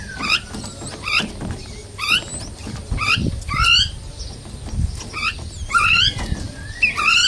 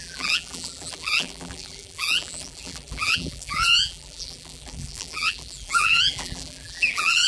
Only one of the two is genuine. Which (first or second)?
first